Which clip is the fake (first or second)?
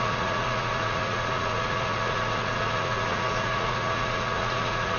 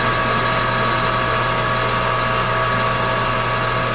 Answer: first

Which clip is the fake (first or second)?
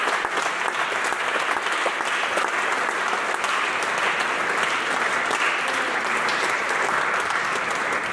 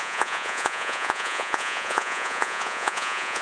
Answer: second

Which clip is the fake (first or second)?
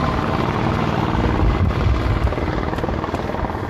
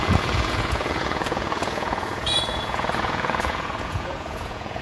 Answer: second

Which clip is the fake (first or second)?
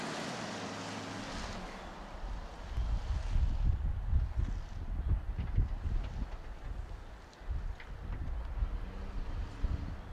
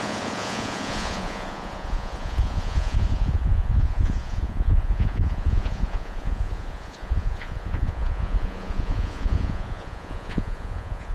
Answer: second